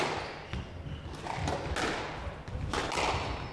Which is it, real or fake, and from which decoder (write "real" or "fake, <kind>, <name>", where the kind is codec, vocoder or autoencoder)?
real